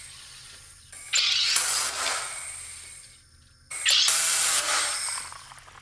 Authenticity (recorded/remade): recorded